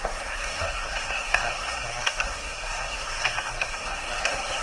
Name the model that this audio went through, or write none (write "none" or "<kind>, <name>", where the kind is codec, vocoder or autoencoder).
codec, SNAC